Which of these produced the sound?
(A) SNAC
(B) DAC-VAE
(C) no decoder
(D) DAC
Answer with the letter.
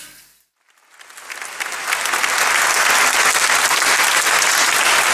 C